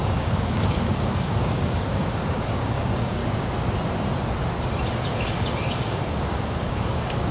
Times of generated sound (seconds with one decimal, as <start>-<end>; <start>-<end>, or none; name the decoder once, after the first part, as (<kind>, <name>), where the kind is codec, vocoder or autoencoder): 0.0-3.2 (codec, DAC); 5.2-7.3